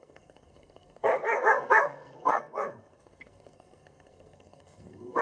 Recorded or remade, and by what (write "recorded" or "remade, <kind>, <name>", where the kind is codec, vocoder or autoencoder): remade, codec, SNAC